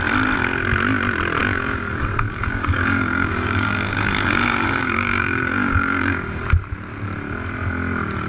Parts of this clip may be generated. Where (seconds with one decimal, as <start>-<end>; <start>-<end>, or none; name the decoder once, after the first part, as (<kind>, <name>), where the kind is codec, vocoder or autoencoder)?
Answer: 1.4-6.4 (codec, DAC)